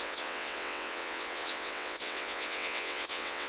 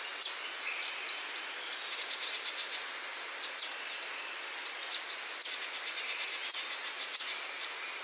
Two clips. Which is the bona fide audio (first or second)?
second